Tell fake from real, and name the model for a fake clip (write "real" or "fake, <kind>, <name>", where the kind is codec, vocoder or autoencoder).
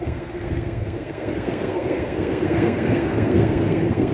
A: fake, codec, SNAC